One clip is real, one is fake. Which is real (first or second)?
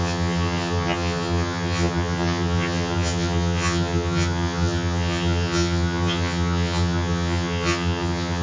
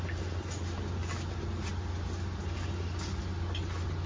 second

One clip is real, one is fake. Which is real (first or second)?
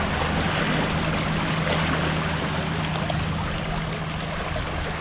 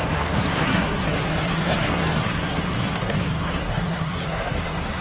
first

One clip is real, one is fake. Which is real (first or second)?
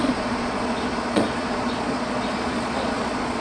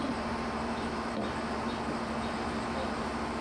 second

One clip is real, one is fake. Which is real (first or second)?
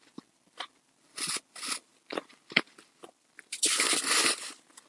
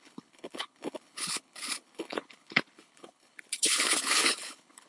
first